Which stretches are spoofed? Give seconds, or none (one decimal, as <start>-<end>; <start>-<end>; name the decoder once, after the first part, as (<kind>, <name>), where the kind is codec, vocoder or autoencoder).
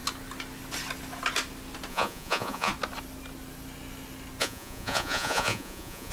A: 1.9-2.7 (vocoder, Vocos); 4.4-6.1